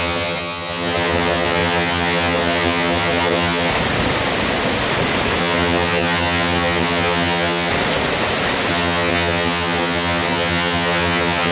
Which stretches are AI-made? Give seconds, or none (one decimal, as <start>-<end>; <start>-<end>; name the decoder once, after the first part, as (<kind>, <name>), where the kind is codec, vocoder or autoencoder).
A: 0.0-3.7 (vocoder, HiFi-GAN); 5.4-7.7; 8.7-11.5